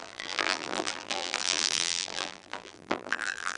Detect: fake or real fake